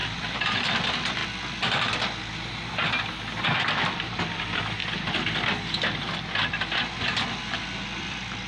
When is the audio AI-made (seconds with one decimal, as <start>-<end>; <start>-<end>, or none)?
0.0-1.2; 3.7-4.8; 8.0-8.5